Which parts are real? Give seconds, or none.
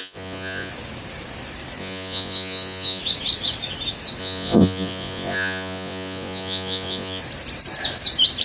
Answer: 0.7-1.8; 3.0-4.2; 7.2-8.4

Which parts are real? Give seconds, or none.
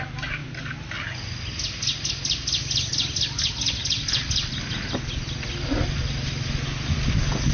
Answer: 0.0-7.5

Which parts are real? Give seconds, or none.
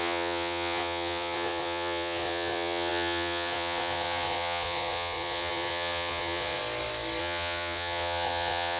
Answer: 6.6-7.2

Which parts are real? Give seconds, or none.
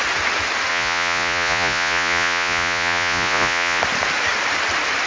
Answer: 0.0-0.7; 3.8-5.1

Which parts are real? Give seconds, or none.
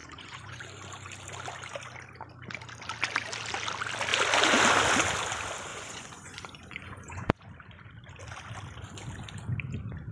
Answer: 0.6-5.7; 7.5-10.1